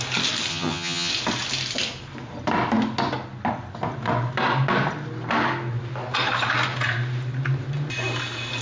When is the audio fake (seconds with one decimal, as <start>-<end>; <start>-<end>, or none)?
0.5-1.1